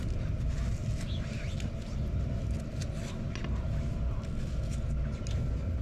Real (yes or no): yes